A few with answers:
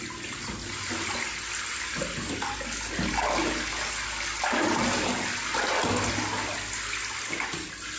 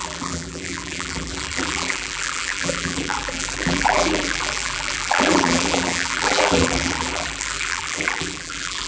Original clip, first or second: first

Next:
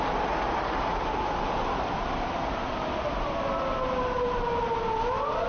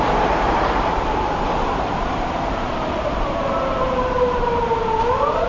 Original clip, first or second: first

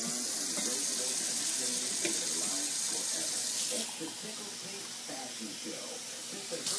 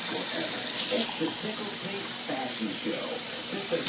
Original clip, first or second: first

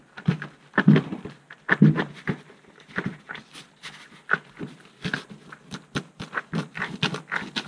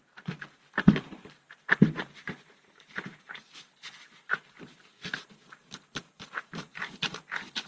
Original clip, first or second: first